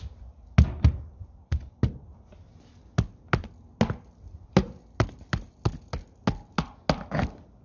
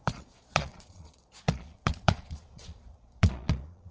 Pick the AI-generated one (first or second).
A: second